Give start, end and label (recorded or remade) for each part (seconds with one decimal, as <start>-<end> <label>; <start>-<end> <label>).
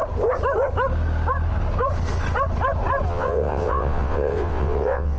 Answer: 0.0-3.1 recorded; 3.1-5.2 remade